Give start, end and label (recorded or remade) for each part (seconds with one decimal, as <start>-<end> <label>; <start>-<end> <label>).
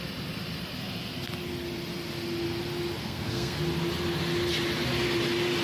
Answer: 0.0-3.0 recorded; 3.0-3.6 remade; 3.6-5.6 recorded